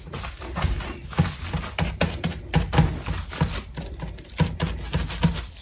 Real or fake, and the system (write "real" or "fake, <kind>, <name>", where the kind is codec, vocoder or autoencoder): real